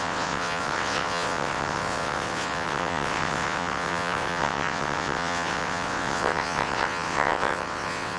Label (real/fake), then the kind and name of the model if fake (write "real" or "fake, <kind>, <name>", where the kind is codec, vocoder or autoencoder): fake, vocoder, WaveNeXt